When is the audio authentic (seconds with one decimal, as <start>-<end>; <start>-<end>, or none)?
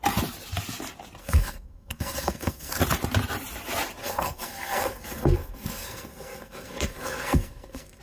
0.0-1.2; 2.8-4.0